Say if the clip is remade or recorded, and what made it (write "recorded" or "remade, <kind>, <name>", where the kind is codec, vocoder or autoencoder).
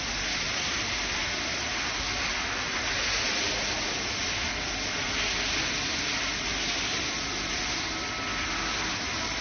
recorded